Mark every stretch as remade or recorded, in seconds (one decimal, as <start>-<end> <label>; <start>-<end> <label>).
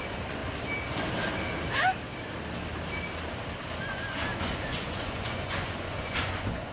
0.0-0.4 remade; 0.4-3.8 recorded; 3.8-6.7 remade